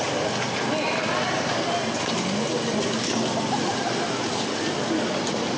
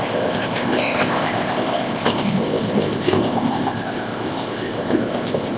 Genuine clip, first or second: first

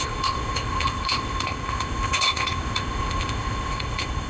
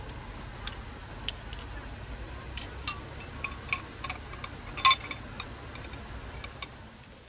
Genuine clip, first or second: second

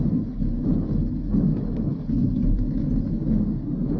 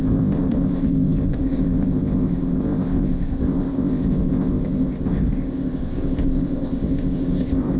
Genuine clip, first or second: first